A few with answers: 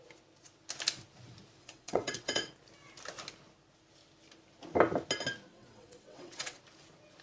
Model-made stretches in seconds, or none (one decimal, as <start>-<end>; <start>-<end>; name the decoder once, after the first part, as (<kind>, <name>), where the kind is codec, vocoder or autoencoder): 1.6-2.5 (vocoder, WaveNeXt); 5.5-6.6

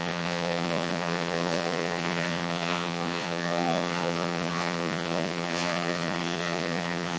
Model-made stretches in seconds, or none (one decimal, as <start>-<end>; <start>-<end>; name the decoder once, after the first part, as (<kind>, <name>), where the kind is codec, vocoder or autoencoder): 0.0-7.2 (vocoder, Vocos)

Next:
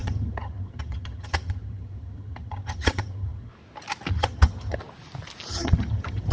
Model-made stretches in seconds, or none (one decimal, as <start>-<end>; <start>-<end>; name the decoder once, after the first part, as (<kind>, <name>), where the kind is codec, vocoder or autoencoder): 0.0-3.5 (vocoder, HiFi-GAN); 4.1-4.8; 5.5-6.3

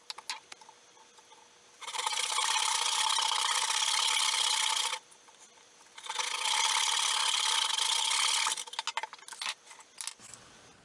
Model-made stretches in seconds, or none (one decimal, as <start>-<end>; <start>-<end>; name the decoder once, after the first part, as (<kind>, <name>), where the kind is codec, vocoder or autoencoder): 1.8-3.0 (vocoder, BigVGAN v2)